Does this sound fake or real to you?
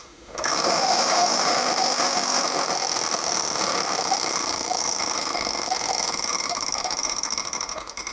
fake